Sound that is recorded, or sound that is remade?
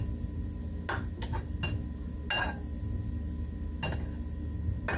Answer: recorded